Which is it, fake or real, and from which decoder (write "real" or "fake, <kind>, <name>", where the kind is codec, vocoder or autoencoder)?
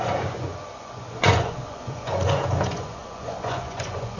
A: fake, vocoder, Vocos